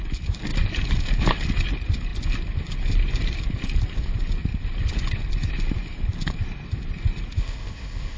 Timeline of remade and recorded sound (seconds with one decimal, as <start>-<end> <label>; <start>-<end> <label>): 0.0-7.4 recorded; 7.4-8.2 remade